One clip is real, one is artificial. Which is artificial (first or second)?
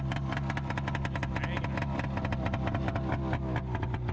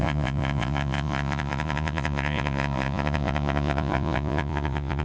second